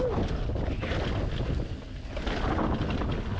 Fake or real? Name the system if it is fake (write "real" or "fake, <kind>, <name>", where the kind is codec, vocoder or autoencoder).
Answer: real